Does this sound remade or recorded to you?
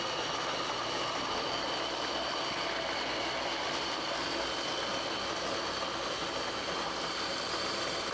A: recorded